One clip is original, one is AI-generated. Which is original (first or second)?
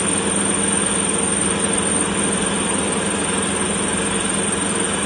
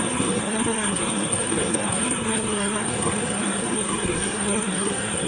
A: first